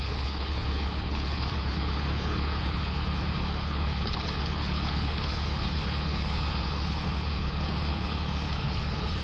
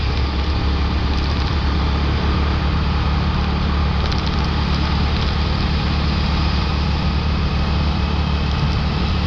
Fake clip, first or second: first